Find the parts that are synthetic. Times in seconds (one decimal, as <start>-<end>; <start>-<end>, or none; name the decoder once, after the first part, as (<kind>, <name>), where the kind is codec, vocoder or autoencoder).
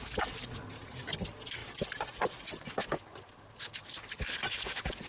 none